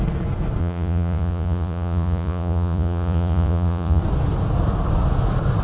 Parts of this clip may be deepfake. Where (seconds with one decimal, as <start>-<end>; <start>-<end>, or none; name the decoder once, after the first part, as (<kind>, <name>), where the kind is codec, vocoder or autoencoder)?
0.6-4.0 (vocoder, Vocos)